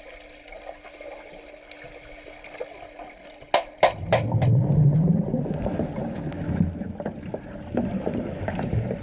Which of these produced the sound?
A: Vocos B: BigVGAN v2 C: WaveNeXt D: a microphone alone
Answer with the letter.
D